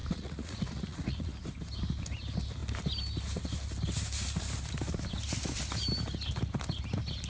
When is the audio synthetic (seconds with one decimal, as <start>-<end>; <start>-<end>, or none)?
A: 0.0-1.3